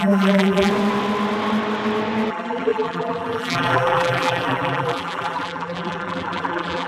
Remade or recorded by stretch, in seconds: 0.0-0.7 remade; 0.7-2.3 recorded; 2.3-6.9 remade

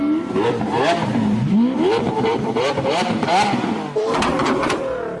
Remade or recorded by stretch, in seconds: 0.0-2.3 recorded; 2.3-3.0 remade; 3.0-5.2 recorded

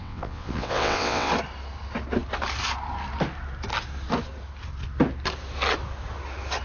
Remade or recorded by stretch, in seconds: 0.0-1.3 remade; 1.3-6.6 recorded

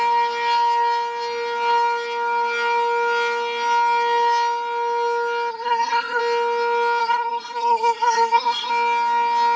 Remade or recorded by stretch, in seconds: 0.0-5.5 recorded; 5.5-6.2 remade; 6.2-7.0 recorded; 7.0-8.7 remade; 8.7-9.6 recorded